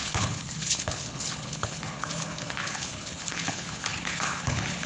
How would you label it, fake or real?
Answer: fake